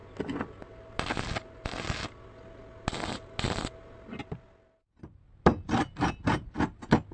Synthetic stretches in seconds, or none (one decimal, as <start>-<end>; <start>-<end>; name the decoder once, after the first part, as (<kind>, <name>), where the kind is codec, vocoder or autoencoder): none